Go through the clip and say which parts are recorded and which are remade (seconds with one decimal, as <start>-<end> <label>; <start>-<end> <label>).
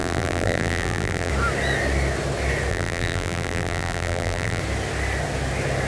0.0-1.3 remade; 1.3-2.7 recorded; 2.7-4.6 remade; 4.6-5.9 recorded